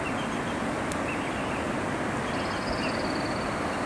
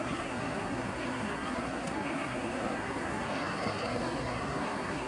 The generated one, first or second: second